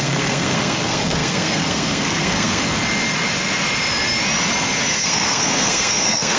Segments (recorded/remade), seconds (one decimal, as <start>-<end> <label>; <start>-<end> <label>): 0.0-2.6 remade; 2.6-4.9 recorded; 4.9-6.4 remade

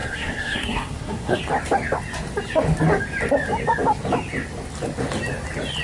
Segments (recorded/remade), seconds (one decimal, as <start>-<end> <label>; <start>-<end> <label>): 0.0-1.4 remade; 1.4-5.8 recorded

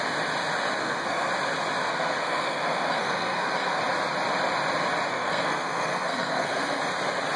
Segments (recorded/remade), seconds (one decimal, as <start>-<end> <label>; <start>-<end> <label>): 0.0-0.8 recorded; 0.8-1.3 remade; 1.3-1.9 recorded; 1.9-3.8 remade; 3.8-5.1 recorded; 5.1-6.8 remade; 6.8-7.4 recorded